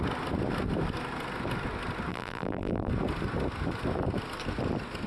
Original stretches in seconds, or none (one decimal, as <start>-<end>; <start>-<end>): 0.0-2.1; 2.9-5.1